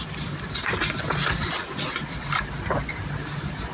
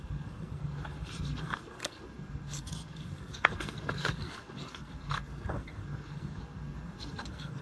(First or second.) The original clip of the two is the first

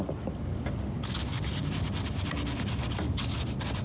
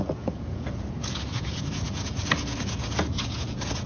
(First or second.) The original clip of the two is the first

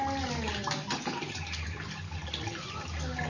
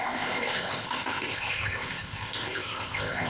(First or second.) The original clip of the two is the first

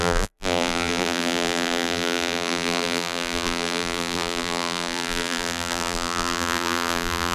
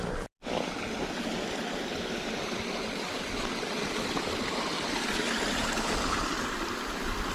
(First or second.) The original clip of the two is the second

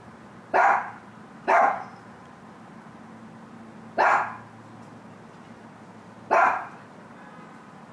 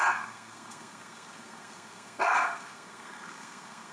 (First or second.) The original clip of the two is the first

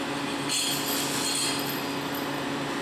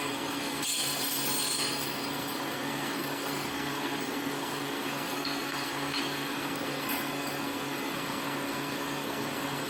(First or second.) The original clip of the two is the first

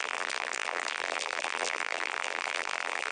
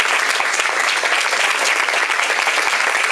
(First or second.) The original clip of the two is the second